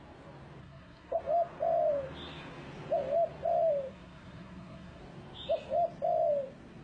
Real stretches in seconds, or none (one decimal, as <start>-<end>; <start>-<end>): 0.0-0.6; 1.2-3.9; 5.0-6.8